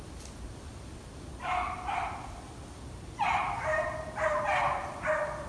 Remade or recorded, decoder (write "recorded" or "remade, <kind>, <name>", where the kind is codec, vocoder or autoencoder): recorded